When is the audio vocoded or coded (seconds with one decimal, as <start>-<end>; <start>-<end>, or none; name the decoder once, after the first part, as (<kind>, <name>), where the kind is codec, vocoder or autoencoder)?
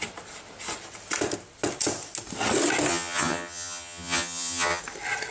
2.9-4.8 (vocoder, HiFi-GAN)